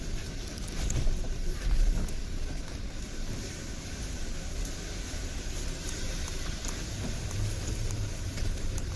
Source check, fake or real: fake